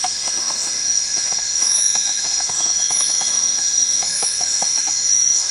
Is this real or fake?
fake